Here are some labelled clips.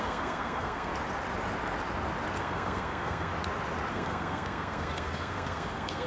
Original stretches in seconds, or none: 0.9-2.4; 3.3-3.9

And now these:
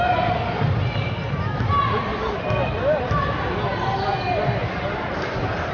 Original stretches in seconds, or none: 0.0-4.6

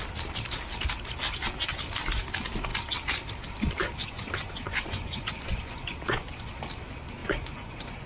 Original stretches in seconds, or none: 0.0-4.0; 6.5-7.2

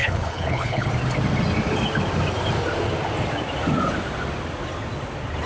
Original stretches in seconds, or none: 0.9-5.5

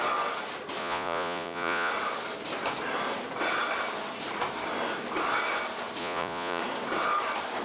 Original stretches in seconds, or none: 0.0-0.8; 1.9-6.0; 6.6-7.6

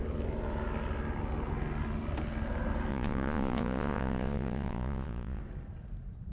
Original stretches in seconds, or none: 0.0-2.9; 5.4-6.3

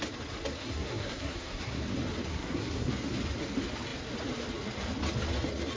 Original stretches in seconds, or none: 0.0-0.5; 1.8-2.3; 2.9-5.8

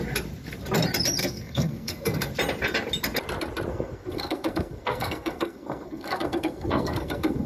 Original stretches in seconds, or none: 0.0-1.2; 2.3-3.7